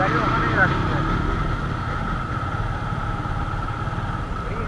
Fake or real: real